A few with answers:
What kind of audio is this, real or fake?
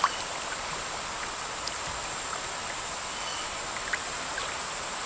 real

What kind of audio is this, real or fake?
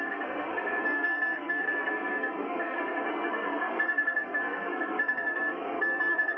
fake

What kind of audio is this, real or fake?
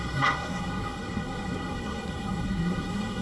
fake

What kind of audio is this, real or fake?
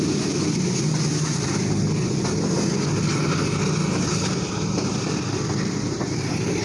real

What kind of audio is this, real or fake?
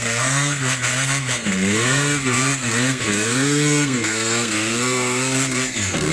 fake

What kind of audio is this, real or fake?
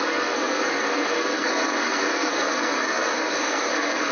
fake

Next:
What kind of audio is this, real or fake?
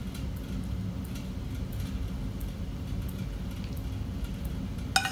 real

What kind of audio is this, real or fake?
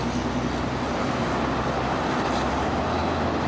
real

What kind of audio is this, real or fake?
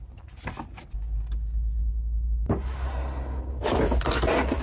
real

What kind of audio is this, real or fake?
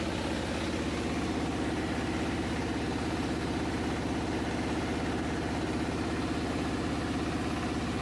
real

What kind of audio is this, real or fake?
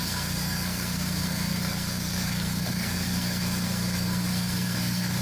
fake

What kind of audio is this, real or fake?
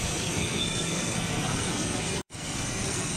fake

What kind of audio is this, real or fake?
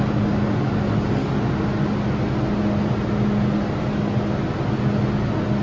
real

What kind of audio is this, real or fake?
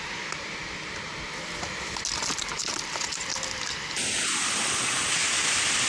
real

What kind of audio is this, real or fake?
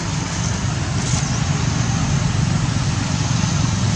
real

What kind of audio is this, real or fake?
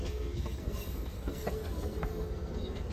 fake